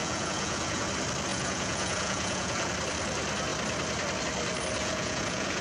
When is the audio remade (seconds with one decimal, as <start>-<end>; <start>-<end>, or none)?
0.0-0.9; 1.3-2.7; 4.8-5.6